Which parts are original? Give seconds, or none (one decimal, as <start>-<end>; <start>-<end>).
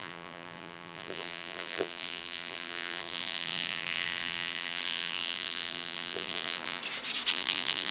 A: 6.8-7.3